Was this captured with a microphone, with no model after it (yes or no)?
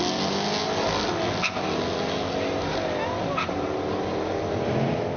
yes